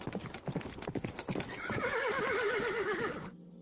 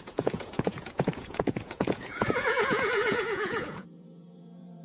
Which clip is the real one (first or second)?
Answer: first